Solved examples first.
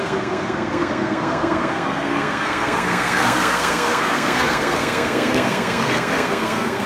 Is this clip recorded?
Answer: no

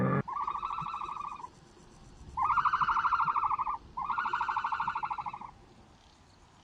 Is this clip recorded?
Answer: yes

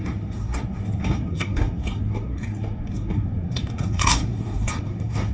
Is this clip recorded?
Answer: no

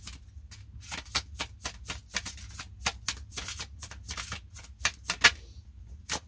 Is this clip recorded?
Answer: yes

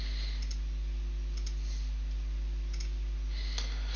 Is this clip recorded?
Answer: yes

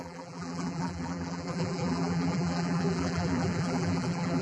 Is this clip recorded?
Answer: no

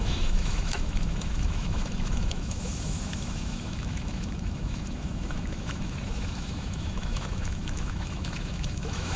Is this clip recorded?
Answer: no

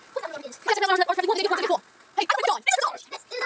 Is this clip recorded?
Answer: yes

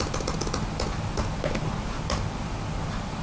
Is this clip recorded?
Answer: yes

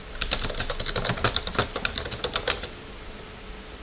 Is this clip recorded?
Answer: yes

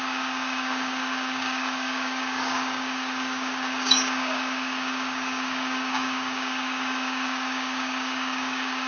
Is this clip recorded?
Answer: no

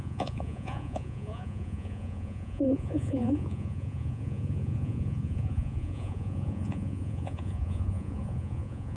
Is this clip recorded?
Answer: no